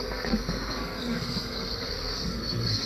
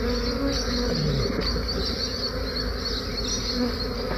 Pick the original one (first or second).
second